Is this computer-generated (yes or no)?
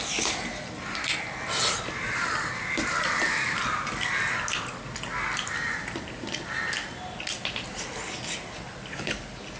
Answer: no